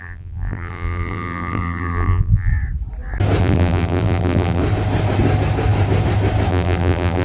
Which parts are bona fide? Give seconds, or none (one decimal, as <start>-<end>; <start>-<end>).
2.5-3.4; 4.6-6.5

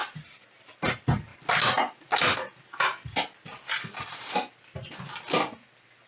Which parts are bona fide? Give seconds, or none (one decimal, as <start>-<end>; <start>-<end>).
0.0-6.1

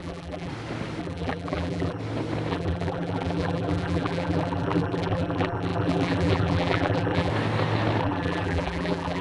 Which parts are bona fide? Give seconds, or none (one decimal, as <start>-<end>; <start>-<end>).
0.5-1.0; 2.0-2.5; 7.3-8.0

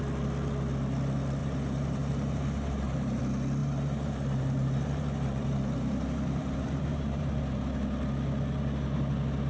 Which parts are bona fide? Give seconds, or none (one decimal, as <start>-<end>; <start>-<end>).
0.0-1.4; 3.2-3.6; 7.4-9.5

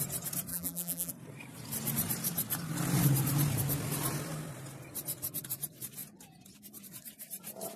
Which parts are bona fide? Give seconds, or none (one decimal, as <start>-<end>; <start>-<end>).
0.0-0.5; 1.1-7.8

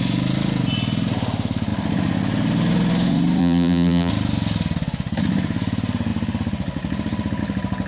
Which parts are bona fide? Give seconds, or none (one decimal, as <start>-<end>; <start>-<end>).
0.0-3.4; 4.1-7.9

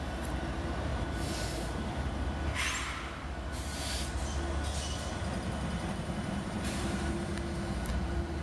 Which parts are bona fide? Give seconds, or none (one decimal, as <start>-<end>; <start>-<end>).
0.9-5.9; 7.3-7.9

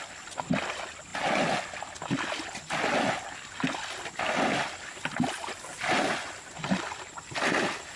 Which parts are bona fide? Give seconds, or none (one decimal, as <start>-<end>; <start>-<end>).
0.0-8.0